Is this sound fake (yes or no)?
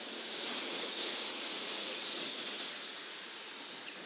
yes